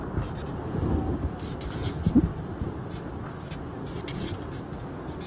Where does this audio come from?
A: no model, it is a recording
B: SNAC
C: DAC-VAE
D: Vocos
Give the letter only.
A